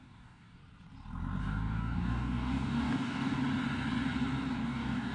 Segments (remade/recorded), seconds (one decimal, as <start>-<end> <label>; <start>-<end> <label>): 0.0-0.6 remade; 0.6-1.4 recorded; 1.4-3.4 remade; 3.4-4.5 recorded; 4.5-5.1 remade